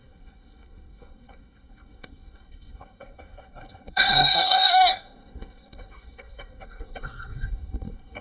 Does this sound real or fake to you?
fake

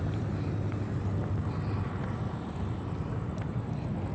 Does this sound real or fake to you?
real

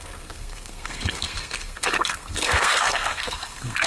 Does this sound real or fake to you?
fake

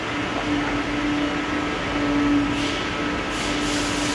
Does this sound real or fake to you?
real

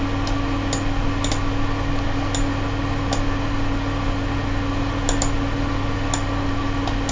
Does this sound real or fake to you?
real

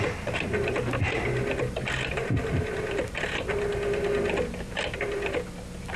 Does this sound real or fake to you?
real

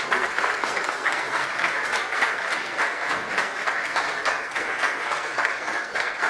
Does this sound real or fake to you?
fake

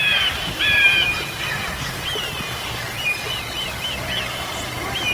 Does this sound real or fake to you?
real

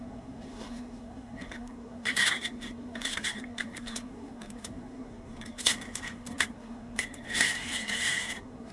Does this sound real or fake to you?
fake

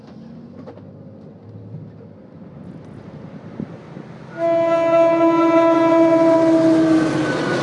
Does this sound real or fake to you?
real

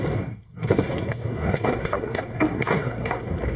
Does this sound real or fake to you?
fake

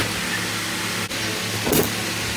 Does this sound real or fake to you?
real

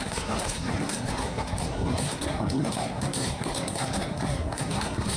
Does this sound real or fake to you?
fake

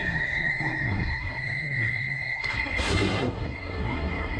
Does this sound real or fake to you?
fake